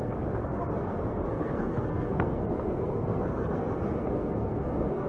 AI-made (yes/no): yes